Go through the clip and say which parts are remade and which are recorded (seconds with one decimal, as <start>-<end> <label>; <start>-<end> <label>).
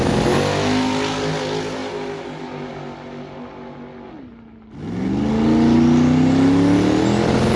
0.0-7.6 recorded